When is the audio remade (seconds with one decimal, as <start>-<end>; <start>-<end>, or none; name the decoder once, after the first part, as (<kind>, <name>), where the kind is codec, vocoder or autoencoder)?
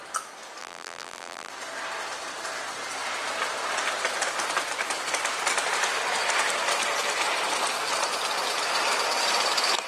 0.6-1.5 (vocoder, BigVGAN v2)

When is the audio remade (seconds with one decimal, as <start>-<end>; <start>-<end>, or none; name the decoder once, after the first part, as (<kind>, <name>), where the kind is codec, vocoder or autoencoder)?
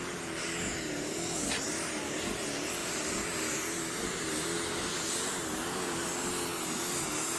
2.8-6.1 (vocoder, BigVGAN v2)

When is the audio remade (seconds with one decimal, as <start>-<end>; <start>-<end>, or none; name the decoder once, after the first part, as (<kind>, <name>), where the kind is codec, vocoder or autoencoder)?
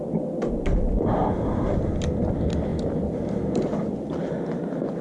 none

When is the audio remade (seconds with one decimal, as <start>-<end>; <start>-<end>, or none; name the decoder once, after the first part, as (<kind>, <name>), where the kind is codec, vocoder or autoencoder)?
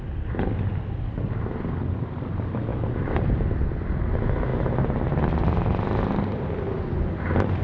none